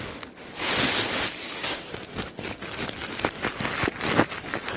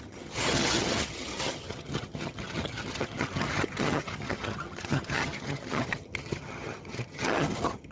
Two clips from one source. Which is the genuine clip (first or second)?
first